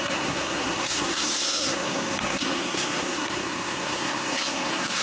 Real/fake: fake